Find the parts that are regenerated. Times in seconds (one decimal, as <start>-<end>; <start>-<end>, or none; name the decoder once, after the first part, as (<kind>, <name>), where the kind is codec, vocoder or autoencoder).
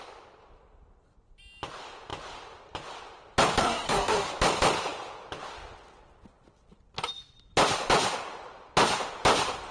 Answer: 3.6-4.3 (codec, SNAC)